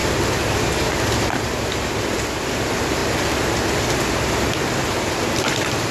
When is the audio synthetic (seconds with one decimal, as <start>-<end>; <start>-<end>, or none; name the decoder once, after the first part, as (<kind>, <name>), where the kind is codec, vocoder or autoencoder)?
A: 0.0-0.6 (vocoder, BigVGAN v2)